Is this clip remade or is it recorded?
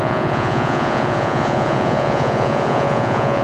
remade